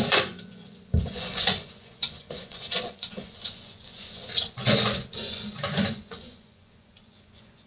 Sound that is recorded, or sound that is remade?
remade